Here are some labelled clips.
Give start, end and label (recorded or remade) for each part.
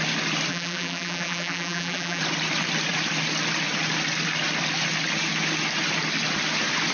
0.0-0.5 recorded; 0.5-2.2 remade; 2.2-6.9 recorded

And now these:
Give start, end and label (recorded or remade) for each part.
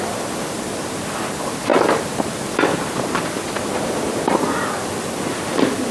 0.0-5.9 recorded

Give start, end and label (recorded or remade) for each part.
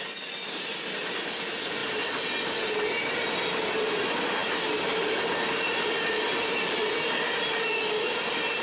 0.0-8.6 recorded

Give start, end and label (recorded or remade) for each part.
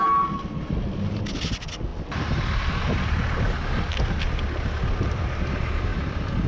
0.0-1.9 recorded; 1.9-2.8 remade; 2.8-6.5 recorded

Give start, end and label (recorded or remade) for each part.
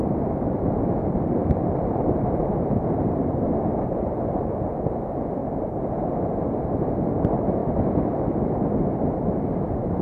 0.0-1.4 recorded; 1.4-2.5 remade; 2.5-5.4 recorded; 5.4-5.9 remade; 5.9-7.6 recorded; 7.6-8.3 remade; 8.3-10.0 recorded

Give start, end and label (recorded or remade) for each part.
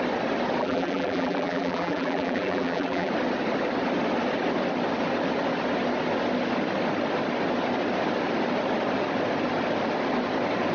0.0-0.6 recorded; 0.6-3.1 remade; 3.1-10.7 recorded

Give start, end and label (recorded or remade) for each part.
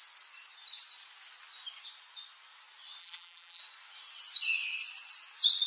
0.0-3.0 recorded; 3.0-3.6 remade; 3.6-5.7 recorded